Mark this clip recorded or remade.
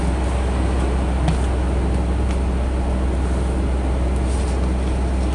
recorded